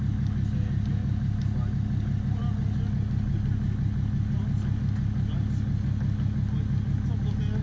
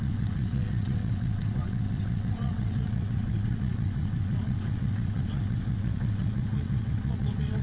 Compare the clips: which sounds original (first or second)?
first